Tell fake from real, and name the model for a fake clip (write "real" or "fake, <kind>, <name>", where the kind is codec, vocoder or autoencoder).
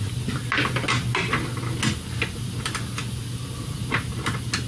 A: real